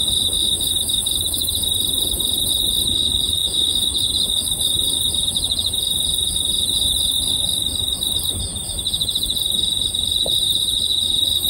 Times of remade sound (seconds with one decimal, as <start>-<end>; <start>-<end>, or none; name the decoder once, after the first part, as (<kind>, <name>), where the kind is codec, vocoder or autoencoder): 0.4-1.5 (autoencoder, DAC-VAE); 3.4-4.1